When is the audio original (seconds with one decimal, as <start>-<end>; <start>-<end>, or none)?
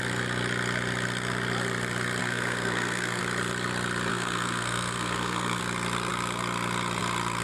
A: 0.0-2.2; 3.2-4.1; 5.6-7.4